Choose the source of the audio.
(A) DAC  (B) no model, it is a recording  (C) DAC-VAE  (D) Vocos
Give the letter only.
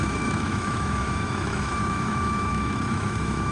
C